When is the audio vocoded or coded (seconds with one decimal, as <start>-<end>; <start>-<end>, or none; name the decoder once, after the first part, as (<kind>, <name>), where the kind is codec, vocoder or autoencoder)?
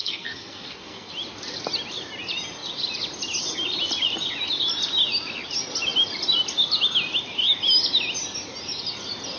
0.0-1.1 (codec, SNAC)